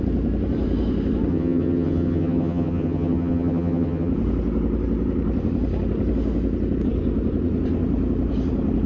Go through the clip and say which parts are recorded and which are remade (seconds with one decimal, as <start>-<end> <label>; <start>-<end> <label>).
0.0-1.3 recorded; 1.3-4.1 remade; 4.1-8.9 recorded